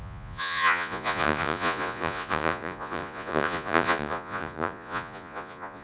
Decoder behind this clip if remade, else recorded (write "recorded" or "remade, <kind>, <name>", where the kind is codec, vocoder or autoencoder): remade, vocoder, Vocos